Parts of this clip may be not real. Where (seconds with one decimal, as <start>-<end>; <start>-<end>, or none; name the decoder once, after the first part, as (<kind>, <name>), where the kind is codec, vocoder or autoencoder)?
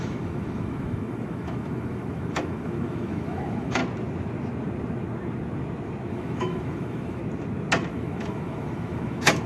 0.0-3.8 (autoencoder, DAC-VAE); 6.1-7.2; 7.9-9.5